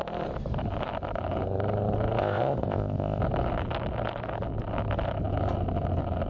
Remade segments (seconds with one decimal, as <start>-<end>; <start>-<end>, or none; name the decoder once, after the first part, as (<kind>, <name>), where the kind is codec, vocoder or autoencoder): 2.2-3.2 (codec, ZipCodec)